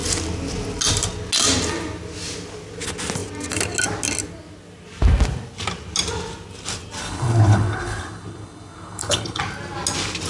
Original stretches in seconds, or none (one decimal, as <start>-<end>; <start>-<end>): 0.0-7.0; 9.4-10.3

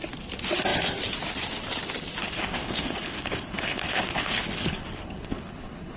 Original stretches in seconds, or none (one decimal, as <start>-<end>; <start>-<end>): 0.0-2.2